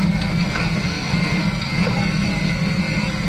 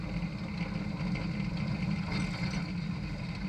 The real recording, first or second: second